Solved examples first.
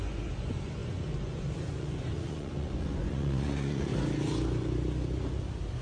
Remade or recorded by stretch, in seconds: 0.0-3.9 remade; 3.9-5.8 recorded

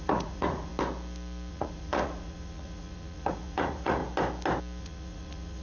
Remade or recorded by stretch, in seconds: 0.0-0.7 remade; 0.7-1.5 recorded; 1.5-4.0 remade; 4.0-4.8 recorded; 4.8-5.6 remade